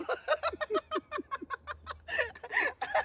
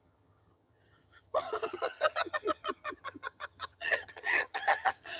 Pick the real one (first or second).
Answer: first